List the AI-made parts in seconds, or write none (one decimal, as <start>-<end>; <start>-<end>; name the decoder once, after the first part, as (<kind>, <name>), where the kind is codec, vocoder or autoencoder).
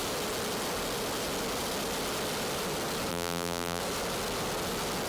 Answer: 3.1-3.8 (vocoder, BigVGAN v2)